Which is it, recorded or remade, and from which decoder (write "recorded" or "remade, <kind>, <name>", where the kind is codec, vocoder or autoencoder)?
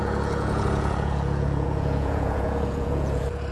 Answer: remade, vocoder, Vocos